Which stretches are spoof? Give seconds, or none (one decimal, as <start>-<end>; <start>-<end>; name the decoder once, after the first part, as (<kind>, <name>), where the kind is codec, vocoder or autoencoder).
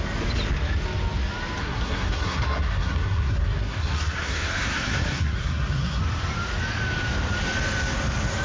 1.6-6.0 (codec, SNAC)